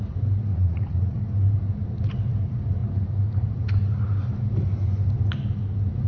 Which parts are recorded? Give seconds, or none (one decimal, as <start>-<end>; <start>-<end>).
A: 0.0-0.5; 1.2-6.1